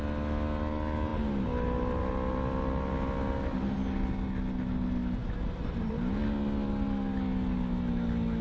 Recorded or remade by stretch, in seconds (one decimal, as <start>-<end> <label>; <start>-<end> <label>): 0.0-8.4 recorded